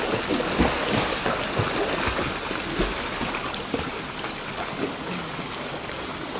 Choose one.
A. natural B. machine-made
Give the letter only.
A